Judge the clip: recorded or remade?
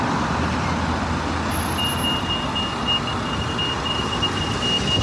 recorded